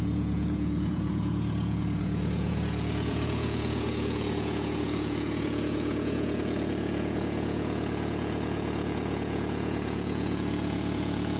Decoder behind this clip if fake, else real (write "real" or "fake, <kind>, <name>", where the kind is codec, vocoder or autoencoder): fake, vocoder, Vocos